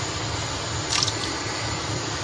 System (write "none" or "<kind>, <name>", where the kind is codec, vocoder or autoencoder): none